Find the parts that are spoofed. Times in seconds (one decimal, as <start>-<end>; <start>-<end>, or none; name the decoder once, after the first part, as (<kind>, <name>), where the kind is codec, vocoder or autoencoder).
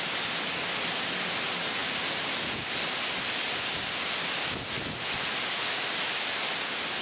none